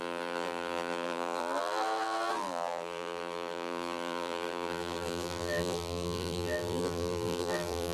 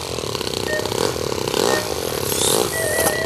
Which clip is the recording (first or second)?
second